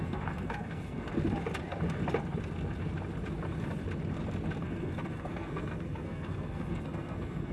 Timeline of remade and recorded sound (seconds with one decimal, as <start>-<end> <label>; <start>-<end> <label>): 0.0-1.1 remade; 1.1-4.6 recorded; 4.6-7.5 remade

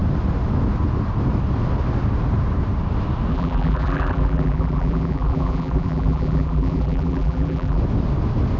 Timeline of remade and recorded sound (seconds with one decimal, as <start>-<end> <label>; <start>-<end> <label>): 0.0-3.3 recorded; 3.3-7.8 remade; 7.8-8.6 recorded

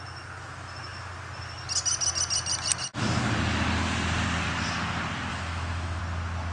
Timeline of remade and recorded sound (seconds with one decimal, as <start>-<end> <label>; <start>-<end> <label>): 0.0-5.3 recorded; 5.3-6.0 remade; 6.0-6.5 recorded

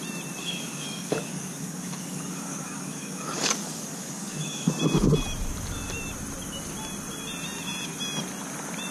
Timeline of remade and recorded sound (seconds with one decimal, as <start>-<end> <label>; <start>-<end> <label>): 0.0-0.4 recorded; 0.4-4.7 remade; 4.7-8.9 recorded

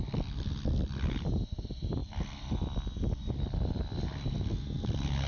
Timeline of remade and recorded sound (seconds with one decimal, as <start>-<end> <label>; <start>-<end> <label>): 0.0-5.3 recorded

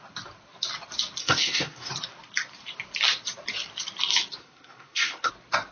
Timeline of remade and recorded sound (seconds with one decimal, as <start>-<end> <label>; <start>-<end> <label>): 0.0-1.2 recorded; 1.2-1.9 remade; 1.9-4.4 recorded; 4.4-5.3 remade; 5.3-5.7 recorded

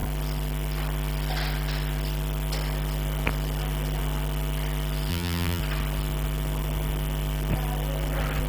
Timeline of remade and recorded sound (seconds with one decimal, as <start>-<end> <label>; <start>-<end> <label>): 0.0-5.1 recorded; 5.1-5.6 remade; 5.6-8.5 recorded